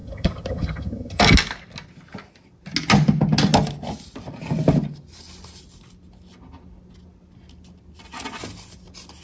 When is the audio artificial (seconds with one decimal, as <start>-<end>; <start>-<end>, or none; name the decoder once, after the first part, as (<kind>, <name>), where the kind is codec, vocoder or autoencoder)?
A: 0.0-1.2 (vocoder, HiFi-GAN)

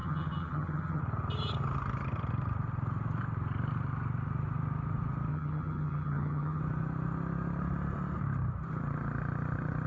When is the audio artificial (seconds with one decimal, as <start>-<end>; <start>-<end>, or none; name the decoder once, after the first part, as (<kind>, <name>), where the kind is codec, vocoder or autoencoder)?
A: 0.0-1.0 (vocoder, HiFi-GAN); 5.3-6.6

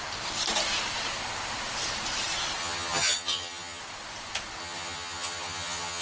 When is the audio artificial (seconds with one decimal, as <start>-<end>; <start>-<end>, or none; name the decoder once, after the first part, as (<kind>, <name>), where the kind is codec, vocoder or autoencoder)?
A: 2.6-3.8 (vocoder, HiFi-GAN); 4.6-6.0